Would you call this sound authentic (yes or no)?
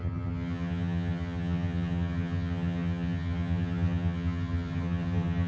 no